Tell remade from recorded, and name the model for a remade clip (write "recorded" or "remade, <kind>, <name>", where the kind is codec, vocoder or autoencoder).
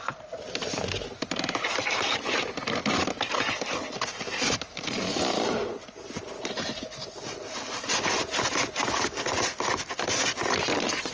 recorded